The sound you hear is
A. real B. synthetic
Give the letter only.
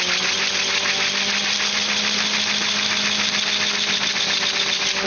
A